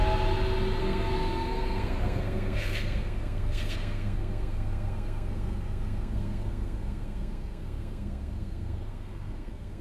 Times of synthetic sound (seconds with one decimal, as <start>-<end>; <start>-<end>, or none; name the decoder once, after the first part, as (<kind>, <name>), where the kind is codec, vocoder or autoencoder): 0.8-9.8 (codec, SNAC)